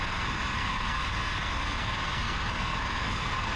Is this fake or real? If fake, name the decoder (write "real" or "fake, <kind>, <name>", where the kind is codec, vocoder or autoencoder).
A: fake, codec, SNAC